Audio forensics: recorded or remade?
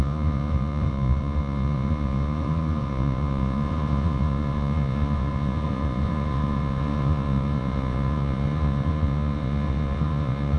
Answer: remade